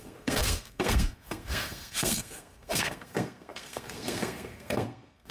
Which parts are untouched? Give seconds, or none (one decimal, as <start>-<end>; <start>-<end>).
none